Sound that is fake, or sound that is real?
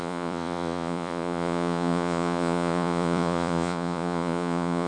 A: fake